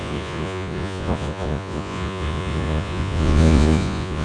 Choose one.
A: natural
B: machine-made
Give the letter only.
B